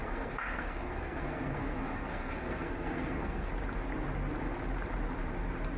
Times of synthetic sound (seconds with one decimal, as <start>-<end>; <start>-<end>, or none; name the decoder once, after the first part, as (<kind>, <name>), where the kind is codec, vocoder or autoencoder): 0.0-3.5 (codec, SNAC)

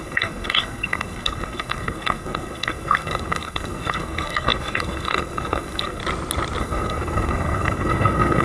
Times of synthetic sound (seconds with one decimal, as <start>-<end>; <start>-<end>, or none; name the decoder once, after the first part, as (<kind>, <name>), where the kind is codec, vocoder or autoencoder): 0.0-6.0 (codec, SNAC); 6.6-8.4

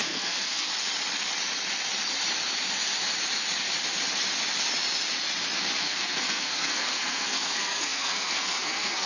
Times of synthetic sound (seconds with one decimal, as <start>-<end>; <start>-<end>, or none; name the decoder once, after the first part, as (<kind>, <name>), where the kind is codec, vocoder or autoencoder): 0.0-0.7 (codec, SNAC); 5.8-9.1

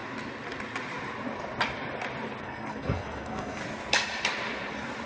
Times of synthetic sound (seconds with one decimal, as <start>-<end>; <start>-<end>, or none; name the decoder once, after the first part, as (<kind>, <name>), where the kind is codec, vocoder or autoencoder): 2.4-3.6 (codec, SNAC)